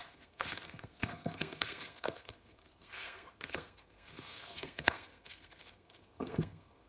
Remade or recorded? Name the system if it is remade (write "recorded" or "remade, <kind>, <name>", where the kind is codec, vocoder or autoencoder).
remade, codec, SNAC